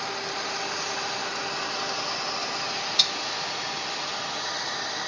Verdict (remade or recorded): recorded